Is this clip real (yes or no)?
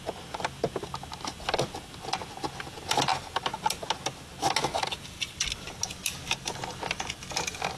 yes